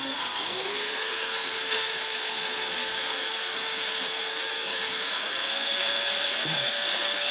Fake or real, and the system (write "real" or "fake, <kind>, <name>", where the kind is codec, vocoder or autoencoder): fake, codec, SNAC